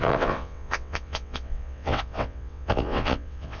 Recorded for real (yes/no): no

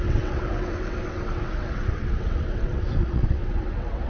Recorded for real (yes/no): no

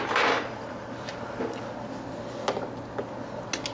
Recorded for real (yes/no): yes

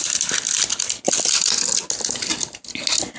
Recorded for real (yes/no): yes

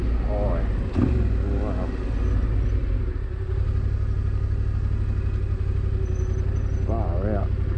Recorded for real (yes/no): yes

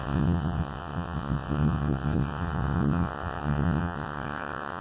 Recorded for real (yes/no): no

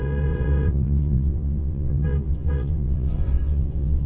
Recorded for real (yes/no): no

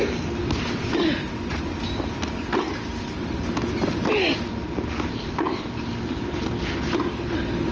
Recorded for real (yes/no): yes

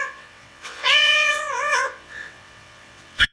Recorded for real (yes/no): no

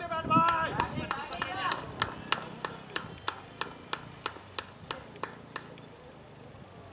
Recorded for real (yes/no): yes